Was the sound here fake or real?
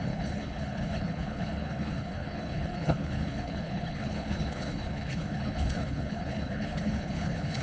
fake